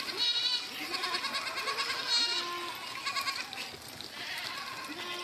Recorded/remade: recorded